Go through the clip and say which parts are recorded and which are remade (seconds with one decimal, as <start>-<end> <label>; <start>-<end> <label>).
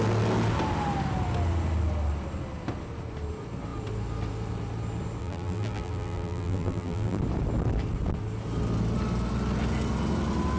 0.0-5.2 recorded; 5.2-7.2 remade; 7.2-10.6 recorded